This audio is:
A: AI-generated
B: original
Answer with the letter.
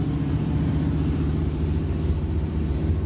A